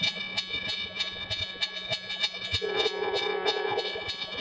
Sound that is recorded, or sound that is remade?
remade